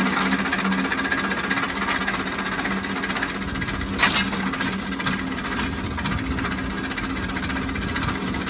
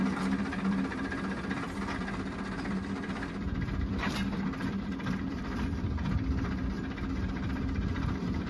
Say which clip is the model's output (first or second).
second